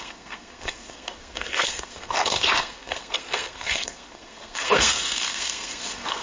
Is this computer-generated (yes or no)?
yes